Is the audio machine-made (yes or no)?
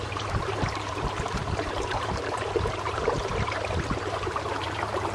yes